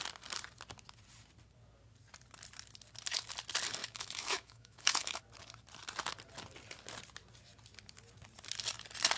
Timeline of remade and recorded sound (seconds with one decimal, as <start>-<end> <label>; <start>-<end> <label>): 0.0-3.8 recorded; 3.8-5.2 remade; 5.2-9.2 recorded